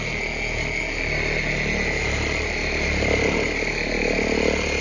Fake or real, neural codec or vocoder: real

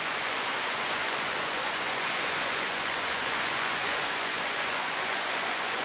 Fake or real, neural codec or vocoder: fake, vocoder, Vocos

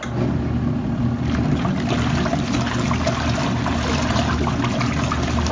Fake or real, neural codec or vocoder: real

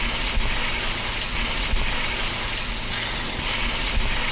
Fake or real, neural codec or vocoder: real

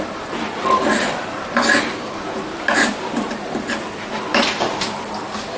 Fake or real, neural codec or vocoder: real